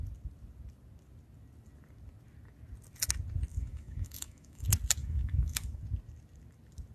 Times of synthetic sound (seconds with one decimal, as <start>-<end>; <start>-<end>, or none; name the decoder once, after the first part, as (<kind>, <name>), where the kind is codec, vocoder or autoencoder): 3.5-4.6 (autoencoder, DAC-VAE); 5.0-5.8